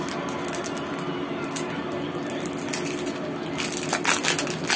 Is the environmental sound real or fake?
real